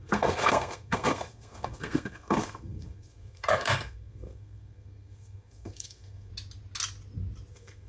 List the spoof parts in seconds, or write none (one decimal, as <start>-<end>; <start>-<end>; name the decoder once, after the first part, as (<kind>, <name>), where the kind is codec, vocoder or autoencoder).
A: 0.0-6.3 (codec, SNAC); 7.5-7.9